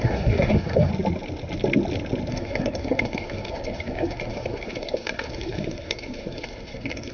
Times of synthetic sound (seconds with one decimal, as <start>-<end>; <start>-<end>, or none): 0.0-0.9; 2.3-7.1